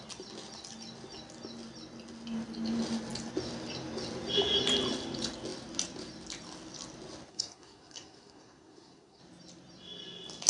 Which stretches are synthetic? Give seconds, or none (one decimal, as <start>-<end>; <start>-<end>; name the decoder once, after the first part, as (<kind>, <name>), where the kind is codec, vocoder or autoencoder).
7.3-9.2 (codec, SNAC)